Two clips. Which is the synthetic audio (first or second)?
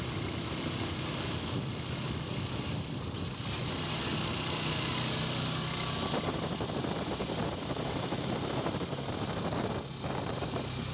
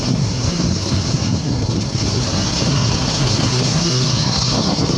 second